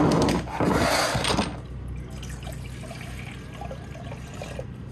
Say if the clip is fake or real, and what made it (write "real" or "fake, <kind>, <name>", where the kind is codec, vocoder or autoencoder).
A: real